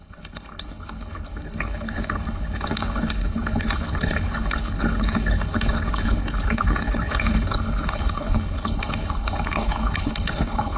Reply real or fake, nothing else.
fake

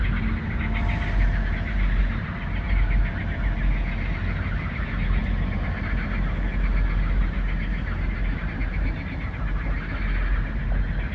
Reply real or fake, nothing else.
real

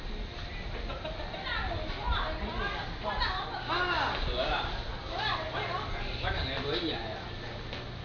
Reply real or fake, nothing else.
real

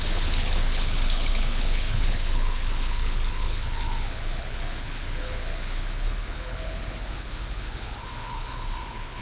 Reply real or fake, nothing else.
fake